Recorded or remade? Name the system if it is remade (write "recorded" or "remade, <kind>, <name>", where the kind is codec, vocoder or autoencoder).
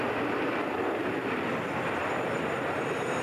recorded